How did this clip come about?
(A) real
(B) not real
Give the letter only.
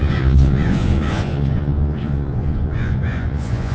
B